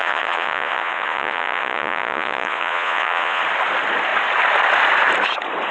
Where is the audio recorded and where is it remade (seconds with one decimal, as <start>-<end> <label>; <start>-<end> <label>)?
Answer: 0.0-3.4 remade; 3.4-5.7 recorded